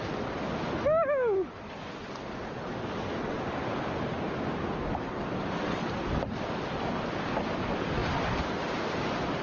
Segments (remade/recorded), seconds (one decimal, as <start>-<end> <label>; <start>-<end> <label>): 0.0-9.4 recorded